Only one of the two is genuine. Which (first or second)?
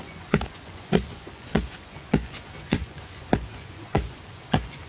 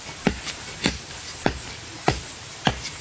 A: second